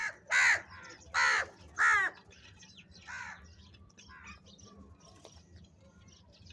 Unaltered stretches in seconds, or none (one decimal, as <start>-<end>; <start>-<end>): 0.0-6.5